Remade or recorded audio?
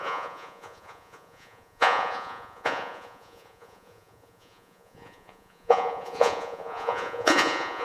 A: remade